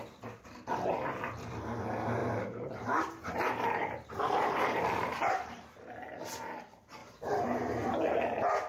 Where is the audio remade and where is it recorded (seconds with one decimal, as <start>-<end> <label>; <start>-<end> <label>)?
0.0-2.2 recorded; 2.2-5.9 remade; 5.9-7.0 recorded; 7.0-8.1 remade; 8.1-8.7 recorded

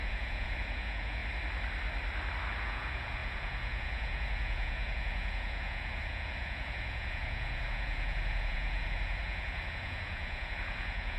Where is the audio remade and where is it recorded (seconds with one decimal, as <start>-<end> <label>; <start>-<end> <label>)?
0.0-1.2 remade; 1.2-2.6 recorded; 2.6-11.2 remade

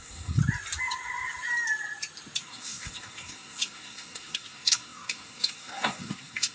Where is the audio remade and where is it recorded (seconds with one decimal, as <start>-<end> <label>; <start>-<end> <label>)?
0.0-0.4 remade; 0.4-2.4 recorded; 2.4-6.5 remade

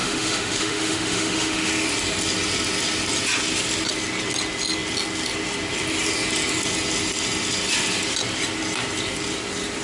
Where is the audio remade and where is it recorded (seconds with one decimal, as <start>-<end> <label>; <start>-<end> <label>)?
0.0-1.7 remade; 1.7-9.8 recorded

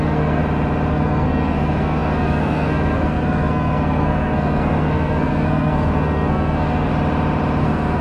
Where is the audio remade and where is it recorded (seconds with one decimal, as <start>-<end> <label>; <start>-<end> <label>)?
0.0-0.4 remade; 0.4-0.9 recorded; 0.9-6.9 remade; 6.9-7.6 recorded; 7.6-8.0 remade

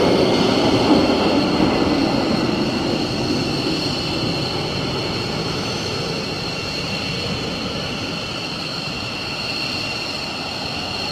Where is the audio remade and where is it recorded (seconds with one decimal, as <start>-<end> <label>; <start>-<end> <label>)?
0.0-5.4 recorded; 5.4-6.0 remade; 6.0-8.3 recorded; 8.3-9.1 remade; 9.1-11.1 recorded